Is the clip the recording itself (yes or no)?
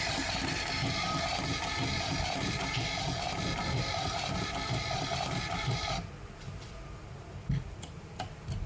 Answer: yes